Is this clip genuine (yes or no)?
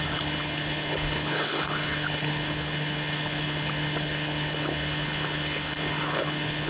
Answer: no